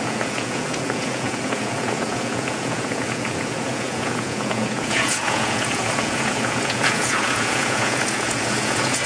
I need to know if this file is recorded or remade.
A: remade